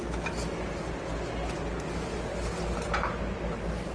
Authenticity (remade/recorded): recorded